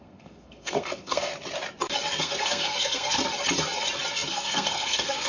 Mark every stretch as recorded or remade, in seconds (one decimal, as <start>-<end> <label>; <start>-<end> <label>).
0.0-1.3 remade; 1.3-2.2 recorded; 2.2-3.2 remade; 3.2-4.1 recorded; 4.1-5.3 remade

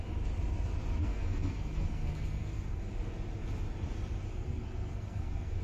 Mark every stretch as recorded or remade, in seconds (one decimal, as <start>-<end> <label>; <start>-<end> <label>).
0.0-1.0 recorded; 1.0-2.8 remade; 2.8-4.3 recorded; 4.3-5.6 remade

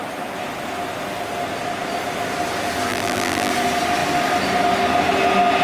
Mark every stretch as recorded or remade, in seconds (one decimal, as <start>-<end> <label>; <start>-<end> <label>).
0.0-2.9 recorded; 2.9-3.5 remade; 3.5-5.6 recorded

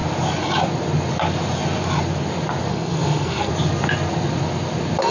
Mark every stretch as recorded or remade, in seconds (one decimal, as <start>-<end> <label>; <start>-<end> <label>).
0.0-2.7 recorded; 2.7-3.5 remade; 3.5-5.1 recorded

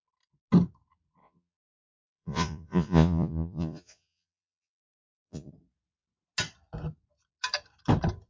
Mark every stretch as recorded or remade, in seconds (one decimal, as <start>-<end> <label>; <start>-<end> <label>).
0.0-1.2 recorded; 1.2-5.5 remade; 5.5-8.3 recorded

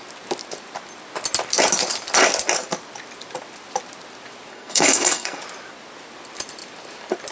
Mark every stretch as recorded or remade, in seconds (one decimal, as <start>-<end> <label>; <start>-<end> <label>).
0.0-4.5 recorded; 4.5-5.4 remade; 5.4-7.3 recorded

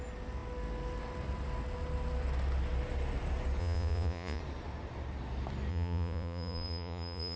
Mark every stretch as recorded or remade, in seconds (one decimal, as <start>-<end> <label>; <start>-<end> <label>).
0.0-3.6 recorded; 3.6-4.4 remade; 4.4-5.7 recorded; 5.7-7.4 remade